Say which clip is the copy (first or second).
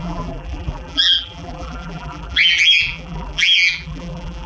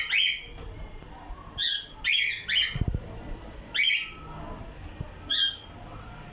first